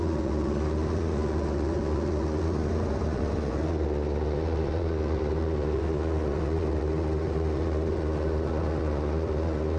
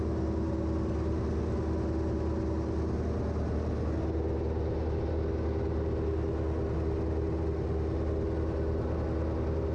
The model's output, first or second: first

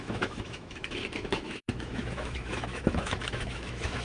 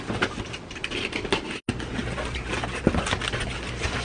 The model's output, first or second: first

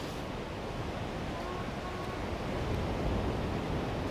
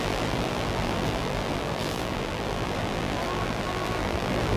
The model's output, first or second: second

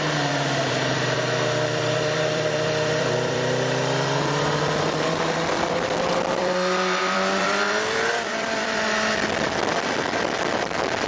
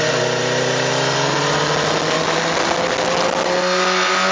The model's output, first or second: first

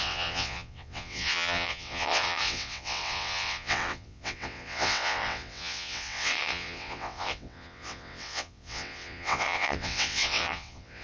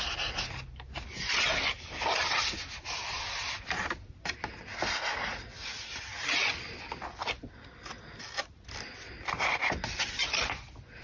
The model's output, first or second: first